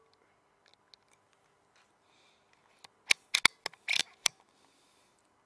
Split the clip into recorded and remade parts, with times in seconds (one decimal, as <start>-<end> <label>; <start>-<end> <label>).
0.0-5.5 recorded